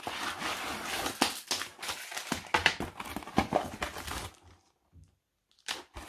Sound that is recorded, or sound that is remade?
recorded